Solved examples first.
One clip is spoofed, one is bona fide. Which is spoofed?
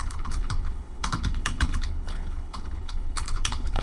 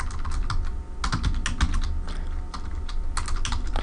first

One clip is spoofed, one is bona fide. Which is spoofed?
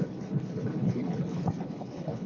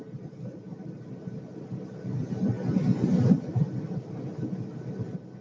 first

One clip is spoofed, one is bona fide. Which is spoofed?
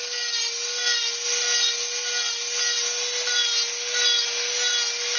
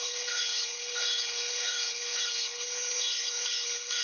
second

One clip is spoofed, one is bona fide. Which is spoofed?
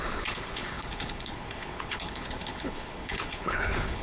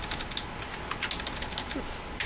first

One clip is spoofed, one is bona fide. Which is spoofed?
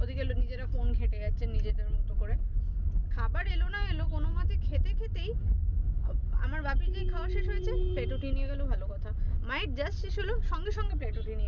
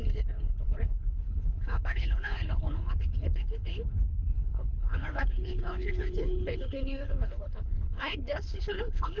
second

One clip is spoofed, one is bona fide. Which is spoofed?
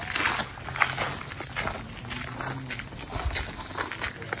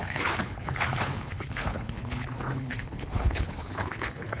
second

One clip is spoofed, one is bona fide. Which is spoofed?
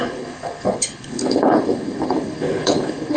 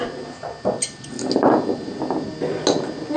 first